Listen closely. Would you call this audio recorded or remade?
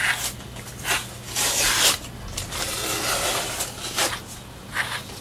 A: recorded